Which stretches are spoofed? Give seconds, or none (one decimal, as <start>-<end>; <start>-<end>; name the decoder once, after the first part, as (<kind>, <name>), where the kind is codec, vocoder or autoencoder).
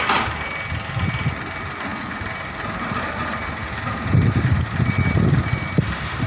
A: none